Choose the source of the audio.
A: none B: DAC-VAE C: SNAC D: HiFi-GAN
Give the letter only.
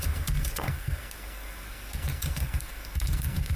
C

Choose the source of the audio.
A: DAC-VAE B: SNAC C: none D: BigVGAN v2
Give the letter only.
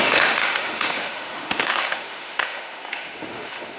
A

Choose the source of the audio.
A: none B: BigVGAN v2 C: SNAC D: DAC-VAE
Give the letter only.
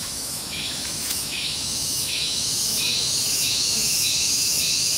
D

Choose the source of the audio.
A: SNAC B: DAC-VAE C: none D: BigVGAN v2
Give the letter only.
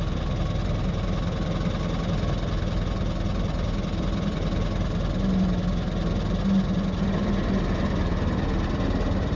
C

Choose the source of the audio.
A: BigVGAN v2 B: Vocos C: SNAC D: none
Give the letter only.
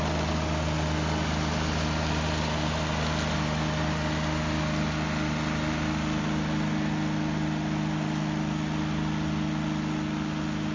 D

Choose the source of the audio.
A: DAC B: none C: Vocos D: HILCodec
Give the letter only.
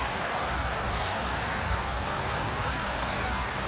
A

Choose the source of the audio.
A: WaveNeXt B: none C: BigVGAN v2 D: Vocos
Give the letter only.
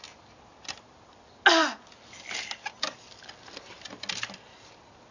B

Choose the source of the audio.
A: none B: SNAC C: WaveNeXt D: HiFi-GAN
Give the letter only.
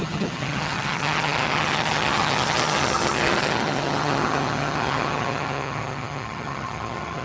D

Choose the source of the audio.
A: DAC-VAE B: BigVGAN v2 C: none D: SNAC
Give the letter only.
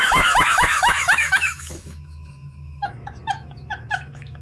A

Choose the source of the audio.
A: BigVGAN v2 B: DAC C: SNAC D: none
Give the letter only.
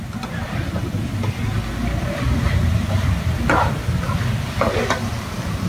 D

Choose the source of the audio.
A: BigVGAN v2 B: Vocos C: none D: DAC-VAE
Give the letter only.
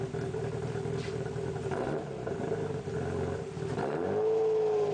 C